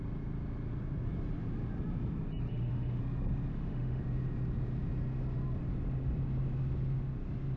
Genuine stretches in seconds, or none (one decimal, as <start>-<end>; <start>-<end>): 0.0-2.5; 3.0-3.5; 4.0-7.6